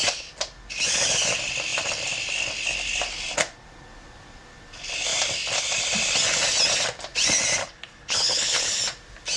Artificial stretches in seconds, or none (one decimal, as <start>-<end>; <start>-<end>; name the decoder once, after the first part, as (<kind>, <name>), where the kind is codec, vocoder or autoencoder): 7.6-8.8 (codec, HILCodec)

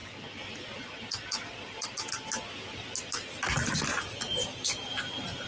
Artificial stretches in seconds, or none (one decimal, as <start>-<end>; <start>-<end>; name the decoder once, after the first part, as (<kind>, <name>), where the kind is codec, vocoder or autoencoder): none

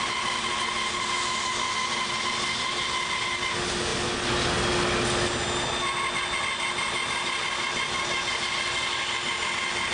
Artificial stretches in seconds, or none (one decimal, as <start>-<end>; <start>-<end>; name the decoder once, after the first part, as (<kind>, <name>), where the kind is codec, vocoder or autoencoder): none

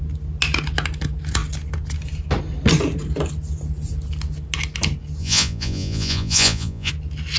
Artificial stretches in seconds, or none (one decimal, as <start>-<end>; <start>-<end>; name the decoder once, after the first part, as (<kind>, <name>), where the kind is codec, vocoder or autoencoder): 5.2-6.9 (vocoder, Vocos)

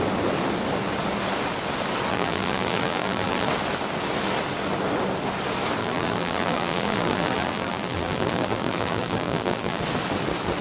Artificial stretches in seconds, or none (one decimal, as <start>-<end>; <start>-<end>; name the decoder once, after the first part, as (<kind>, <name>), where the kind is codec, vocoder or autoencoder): 2.1-3.5 (vocoder, BigVGAN v2); 5.8-9.8

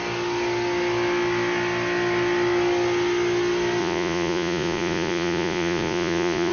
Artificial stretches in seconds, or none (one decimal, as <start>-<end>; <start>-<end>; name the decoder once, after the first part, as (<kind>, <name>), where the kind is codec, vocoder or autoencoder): 3.8-6.5 (vocoder, Vocos)

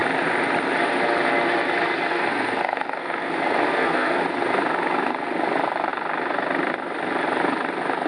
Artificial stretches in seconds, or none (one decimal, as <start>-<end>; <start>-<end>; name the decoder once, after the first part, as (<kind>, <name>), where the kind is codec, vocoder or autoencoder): 2.1-3.3 (codec, SNAC); 3.7-4.2

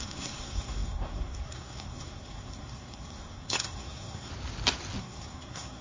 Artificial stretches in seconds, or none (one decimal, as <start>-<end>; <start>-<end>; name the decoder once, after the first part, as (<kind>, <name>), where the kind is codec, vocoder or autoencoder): 0.0-4.3 (codec, SNAC); 5.0-5.8